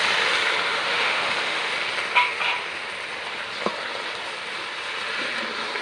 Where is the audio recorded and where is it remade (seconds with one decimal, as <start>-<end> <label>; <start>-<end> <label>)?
0.0-0.7 recorded; 0.7-1.7 remade; 1.7-5.8 recorded

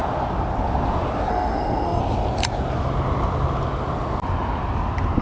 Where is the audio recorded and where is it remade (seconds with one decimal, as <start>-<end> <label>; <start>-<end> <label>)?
0.0-1.3 recorded; 1.3-2.0 remade; 2.0-5.2 recorded

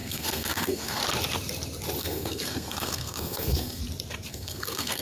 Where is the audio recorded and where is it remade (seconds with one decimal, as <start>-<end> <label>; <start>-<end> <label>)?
0.0-1.0 remade; 1.0-2.0 recorded; 2.0-3.8 remade; 3.8-4.3 recorded; 4.3-5.0 remade

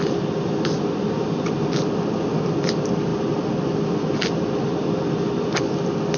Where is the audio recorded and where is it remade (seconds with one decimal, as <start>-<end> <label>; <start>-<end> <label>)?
0.0-6.2 recorded

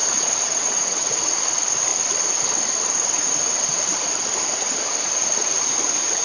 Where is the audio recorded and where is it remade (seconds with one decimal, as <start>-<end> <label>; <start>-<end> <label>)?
0.0-1.1 remade; 1.1-6.2 recorded

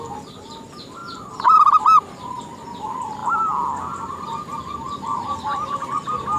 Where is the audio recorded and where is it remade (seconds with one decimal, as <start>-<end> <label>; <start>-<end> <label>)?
0.0-3.2 recorded; 3.2-3.9 remade; 3.9-6.4 recorded